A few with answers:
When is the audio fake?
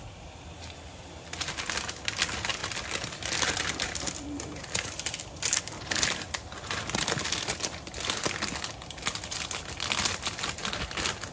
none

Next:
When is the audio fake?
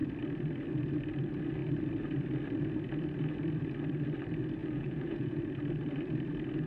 4.6-5.4 (vocoder, Vocos)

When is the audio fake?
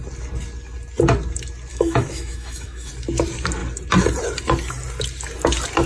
1.7-2.9 (autoencoder, DAC-VAE)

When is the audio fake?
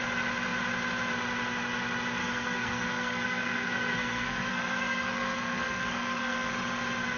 2.2-6.5 (codec, SNAC)